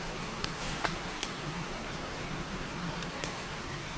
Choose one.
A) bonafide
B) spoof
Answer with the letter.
B